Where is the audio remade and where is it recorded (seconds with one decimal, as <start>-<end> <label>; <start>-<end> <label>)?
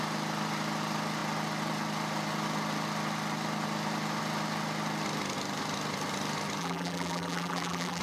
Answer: 0.0-6.6 recorded; 6.6-8.0 remade